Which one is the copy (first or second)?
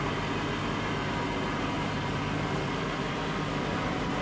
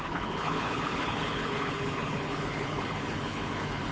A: second